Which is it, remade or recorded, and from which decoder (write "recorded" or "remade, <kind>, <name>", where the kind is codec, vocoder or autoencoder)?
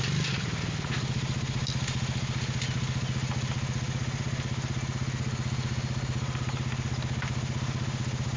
recorded